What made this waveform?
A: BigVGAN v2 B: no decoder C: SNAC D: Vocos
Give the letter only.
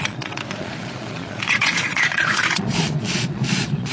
D